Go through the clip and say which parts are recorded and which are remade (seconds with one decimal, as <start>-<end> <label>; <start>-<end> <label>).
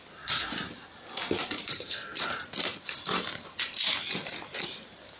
0.0-1.7 recorded; 1.7-2.2 remade; 2.2-5.2 recorded